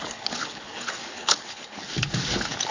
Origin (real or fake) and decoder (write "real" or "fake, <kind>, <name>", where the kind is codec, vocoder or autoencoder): fake, codec, HILCodec